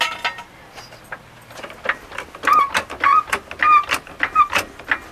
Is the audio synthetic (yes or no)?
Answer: no